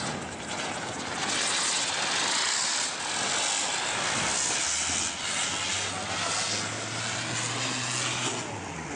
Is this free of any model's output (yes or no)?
yes